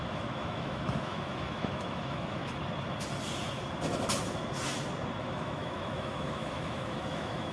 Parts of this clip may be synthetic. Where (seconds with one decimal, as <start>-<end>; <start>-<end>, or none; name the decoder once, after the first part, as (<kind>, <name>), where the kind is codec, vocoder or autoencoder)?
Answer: 0.0-2.4 (autoencoder, DAC-VAE); 5.2-7.5